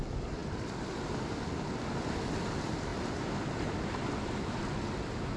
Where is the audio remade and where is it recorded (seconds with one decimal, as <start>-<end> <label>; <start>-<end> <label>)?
0.0-5.4 recorded